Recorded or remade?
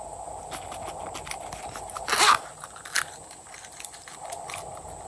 recorded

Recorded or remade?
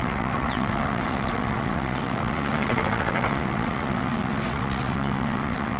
remade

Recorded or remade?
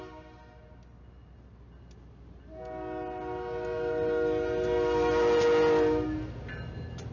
recorded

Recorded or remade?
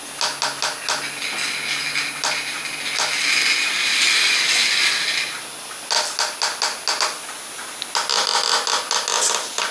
recorded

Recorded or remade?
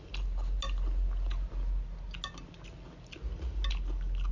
recorded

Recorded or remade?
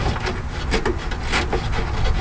recorded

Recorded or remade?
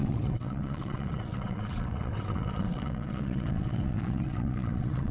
remade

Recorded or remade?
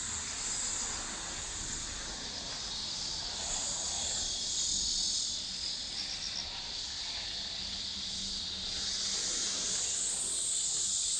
recorded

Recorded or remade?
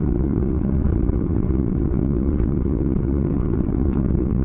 remade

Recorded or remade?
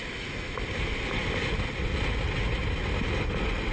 recorded